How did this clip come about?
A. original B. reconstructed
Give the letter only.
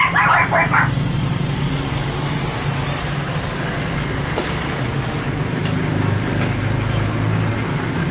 A